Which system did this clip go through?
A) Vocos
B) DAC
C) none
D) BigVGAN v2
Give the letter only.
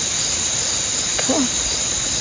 C